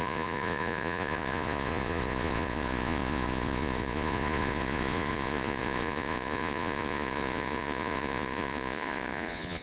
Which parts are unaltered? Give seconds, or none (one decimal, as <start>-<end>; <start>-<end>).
none